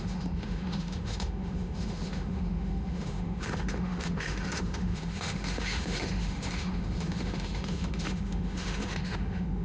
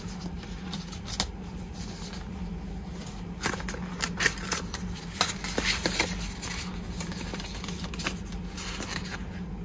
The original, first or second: second